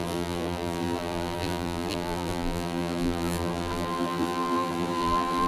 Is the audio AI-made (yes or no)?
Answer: yes